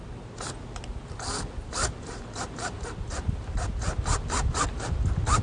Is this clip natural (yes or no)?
yes